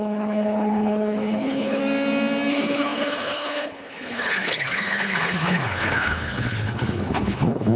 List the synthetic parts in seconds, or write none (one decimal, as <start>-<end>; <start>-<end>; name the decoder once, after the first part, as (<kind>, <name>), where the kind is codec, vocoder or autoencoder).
0.0-1.8 (codec, HILCodec); 2.5-7.8